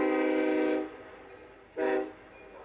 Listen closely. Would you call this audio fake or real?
real